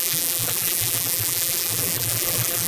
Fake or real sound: fake